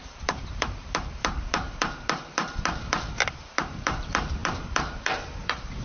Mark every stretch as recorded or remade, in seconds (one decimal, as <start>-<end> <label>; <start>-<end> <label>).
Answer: 0.0-5.8 remade